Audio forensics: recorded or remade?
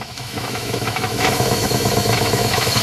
remade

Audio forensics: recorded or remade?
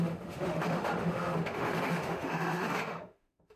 remade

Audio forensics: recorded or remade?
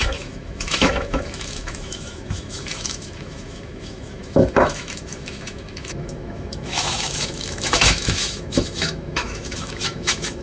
remade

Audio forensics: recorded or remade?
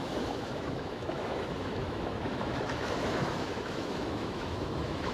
remade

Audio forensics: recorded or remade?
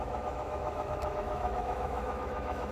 remade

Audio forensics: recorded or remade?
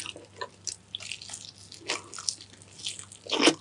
recorded